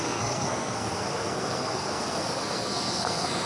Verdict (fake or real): fake